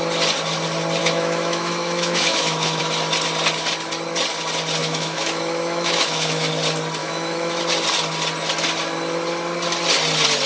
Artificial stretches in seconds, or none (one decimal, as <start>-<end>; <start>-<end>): 1.0-2.8; 4.8-6.5; 7.0-7.6